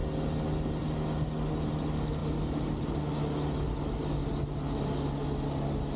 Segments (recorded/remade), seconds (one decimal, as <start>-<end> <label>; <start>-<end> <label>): 0.0-6.0 recorded